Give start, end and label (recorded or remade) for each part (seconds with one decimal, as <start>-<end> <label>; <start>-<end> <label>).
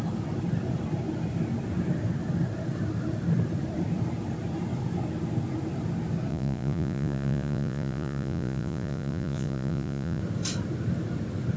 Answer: 0.0-6.3 recorded; 6.3-10.2 remade; 10.2-11.6 recorded